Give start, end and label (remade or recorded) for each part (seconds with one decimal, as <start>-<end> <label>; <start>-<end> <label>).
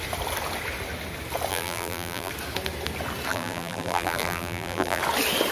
0.0-1.5 recorded; 1.5-2.3 remade; 2.3-3.3 recorded; 3.3-5.0 remade; 5.0-5.5 recorded